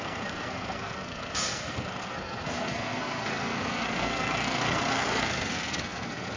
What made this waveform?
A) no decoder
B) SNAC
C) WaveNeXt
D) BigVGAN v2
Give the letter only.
B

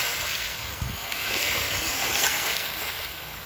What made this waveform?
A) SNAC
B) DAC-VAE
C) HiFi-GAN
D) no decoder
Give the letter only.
A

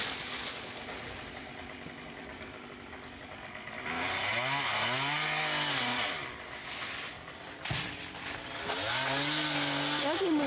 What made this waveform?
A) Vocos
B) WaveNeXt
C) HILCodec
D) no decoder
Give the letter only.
D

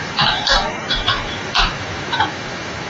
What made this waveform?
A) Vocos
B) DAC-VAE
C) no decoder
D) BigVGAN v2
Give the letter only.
B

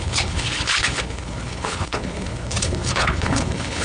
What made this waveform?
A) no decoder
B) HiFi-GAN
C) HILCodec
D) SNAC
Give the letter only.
C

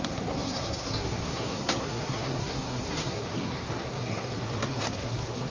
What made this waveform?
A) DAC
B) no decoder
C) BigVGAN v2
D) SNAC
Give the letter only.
D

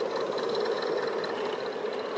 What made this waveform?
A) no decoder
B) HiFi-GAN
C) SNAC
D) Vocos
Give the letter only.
A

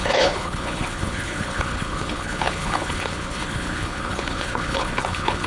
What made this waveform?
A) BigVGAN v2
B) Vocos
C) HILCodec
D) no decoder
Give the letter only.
C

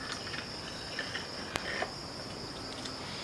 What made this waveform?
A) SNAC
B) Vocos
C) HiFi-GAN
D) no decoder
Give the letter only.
D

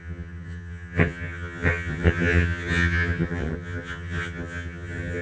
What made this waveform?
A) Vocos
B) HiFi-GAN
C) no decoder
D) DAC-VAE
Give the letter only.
B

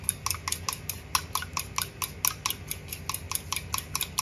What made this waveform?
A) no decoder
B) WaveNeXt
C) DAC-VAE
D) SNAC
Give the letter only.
A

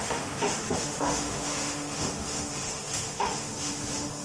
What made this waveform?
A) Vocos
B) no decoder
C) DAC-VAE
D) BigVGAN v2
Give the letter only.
C